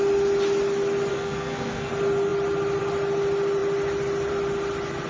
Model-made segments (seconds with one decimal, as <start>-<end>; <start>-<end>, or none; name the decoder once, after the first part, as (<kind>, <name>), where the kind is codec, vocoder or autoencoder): 1.1-1.9 (codec, SNAC)